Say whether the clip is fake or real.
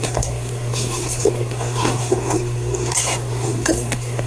fake